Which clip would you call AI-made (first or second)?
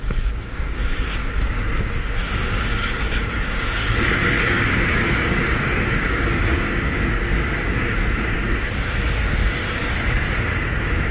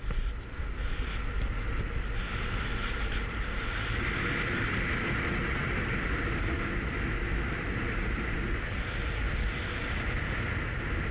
first